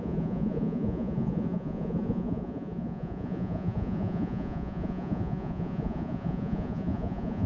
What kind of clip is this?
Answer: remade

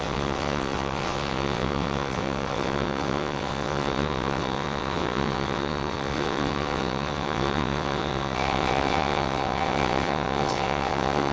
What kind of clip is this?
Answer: remade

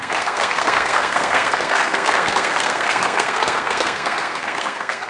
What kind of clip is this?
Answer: remade